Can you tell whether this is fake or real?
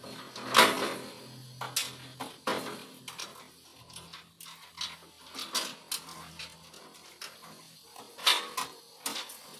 real